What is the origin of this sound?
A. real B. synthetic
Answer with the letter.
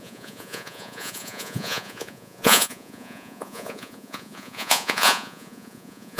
B